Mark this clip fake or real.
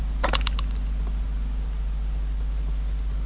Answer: real